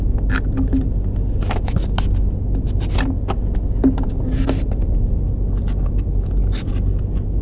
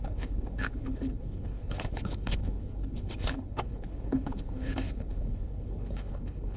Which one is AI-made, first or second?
second